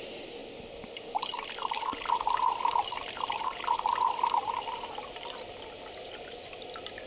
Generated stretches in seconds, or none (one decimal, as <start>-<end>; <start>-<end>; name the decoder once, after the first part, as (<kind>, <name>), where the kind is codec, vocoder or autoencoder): none